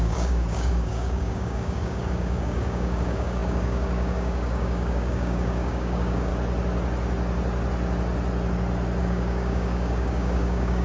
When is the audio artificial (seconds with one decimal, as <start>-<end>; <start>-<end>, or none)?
0.0-6.3; 9.0-10.8

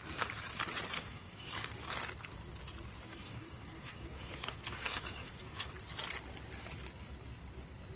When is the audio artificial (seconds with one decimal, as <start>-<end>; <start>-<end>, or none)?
1.0-1.5; 3.1-5.7

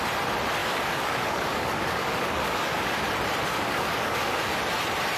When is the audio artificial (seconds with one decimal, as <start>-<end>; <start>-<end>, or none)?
0.6-3.0; 3.5-4.5

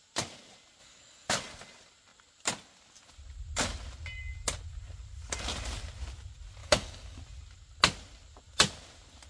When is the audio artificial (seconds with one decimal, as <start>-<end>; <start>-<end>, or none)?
0.8-1.3; 6.6-7.2

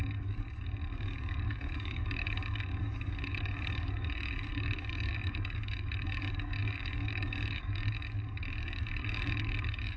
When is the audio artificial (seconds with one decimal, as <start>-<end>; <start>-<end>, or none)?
0.0-10.0